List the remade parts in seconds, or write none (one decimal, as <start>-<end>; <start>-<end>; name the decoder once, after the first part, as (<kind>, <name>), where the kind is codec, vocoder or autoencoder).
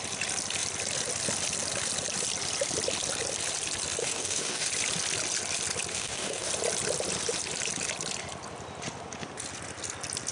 4.0-4.7 (codec, DAC); 5.9-6.5